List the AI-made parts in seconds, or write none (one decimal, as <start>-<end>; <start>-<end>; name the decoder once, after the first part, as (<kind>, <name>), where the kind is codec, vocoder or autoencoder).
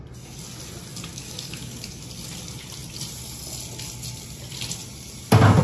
1.1-2.0 (codec, DAC)